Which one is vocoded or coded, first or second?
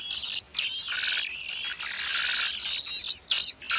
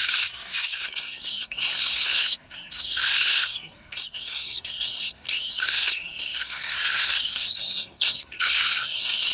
second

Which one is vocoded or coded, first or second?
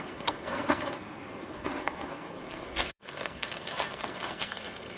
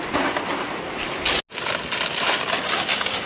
first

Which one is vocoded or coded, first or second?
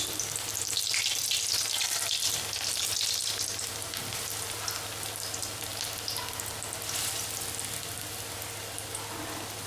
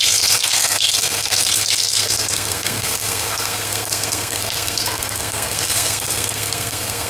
second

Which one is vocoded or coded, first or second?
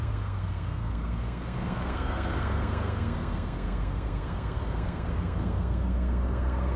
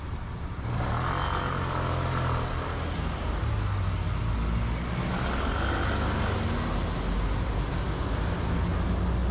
first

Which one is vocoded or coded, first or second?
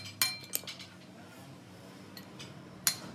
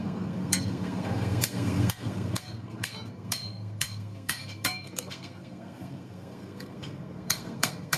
second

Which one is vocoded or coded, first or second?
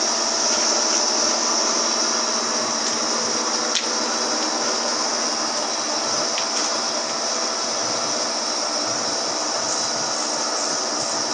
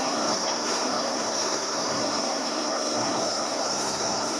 second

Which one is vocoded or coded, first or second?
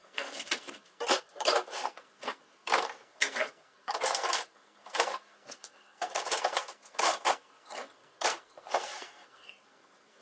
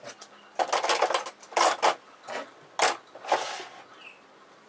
first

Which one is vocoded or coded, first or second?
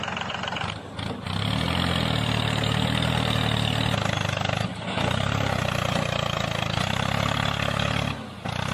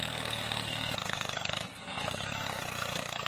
second